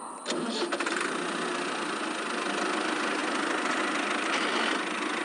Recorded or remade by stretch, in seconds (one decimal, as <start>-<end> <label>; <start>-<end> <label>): 0.0-5.2 recorded